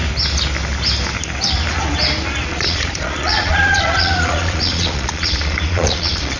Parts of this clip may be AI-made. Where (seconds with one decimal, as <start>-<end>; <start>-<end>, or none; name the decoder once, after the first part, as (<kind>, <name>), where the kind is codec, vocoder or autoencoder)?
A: 2.5-6.4 (vocoder, Vocos)